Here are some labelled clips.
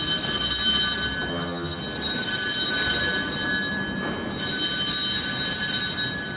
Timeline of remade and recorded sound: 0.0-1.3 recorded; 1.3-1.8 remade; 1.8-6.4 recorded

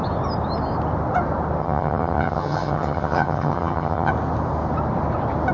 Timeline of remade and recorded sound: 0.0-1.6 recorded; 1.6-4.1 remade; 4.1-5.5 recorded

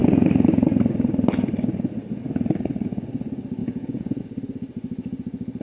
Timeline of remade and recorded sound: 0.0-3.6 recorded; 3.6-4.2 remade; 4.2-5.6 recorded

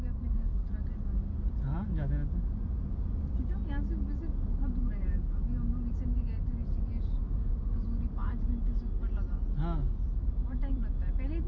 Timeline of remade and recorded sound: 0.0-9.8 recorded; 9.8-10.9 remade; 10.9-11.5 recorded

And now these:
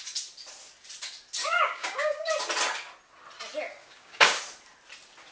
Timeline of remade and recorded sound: 0.0-1.4 recorded; 1.4-2.3 remade; 2.3-3.8 recorded; 3.8-4.4 remade; 4.4-5.3 recorded

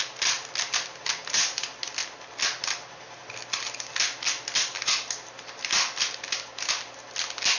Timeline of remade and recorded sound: 0.0-7.6 recorded